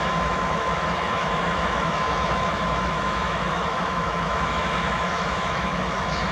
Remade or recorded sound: remade